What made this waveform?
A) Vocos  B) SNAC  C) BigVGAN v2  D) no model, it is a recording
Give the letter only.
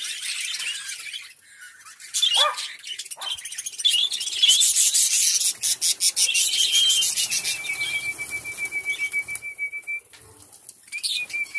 D